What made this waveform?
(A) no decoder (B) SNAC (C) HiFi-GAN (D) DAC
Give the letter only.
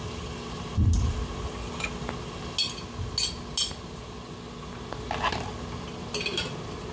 A